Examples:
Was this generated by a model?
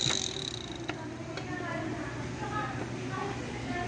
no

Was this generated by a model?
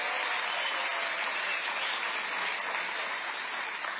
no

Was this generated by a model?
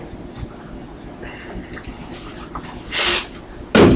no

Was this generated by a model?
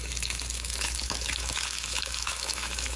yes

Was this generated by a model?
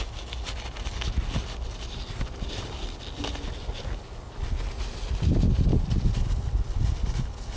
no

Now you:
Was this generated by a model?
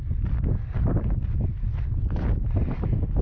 no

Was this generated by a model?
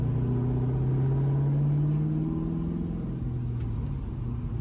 no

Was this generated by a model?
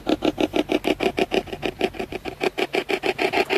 no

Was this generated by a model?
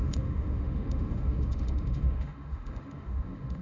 yes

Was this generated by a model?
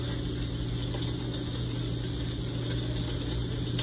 no